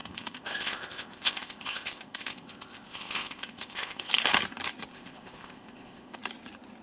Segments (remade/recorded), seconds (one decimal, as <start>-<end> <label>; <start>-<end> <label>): 0.0-4.1 remade; 4.1-4.9 recorded; 4.9-6.2 remade; 6.2-6.8 recorded